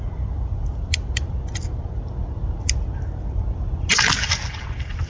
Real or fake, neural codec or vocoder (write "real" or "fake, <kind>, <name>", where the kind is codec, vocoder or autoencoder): real